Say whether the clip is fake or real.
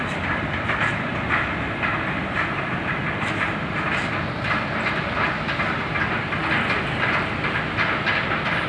real